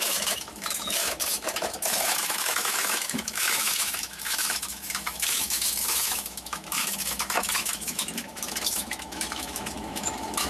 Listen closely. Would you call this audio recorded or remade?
remade